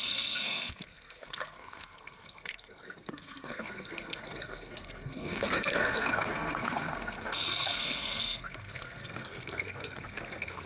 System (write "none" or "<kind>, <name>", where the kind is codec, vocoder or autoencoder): codec, SNAC